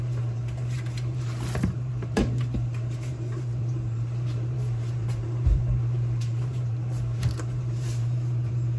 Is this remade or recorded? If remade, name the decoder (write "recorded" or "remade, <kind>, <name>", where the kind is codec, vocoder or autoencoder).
remade, vocoder, BigVGAN v2